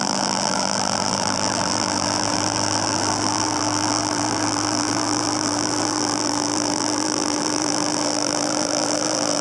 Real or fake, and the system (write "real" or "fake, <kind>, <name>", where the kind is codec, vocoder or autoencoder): fake, vocoder, BigVGAN v2